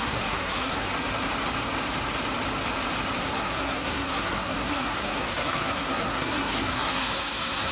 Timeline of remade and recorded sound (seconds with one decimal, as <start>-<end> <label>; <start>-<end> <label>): 0.0-0.9 remade; 0.9-3.2 recorded; 3.2-7.7 remade